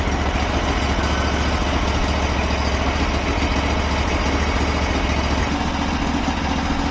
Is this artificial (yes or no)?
no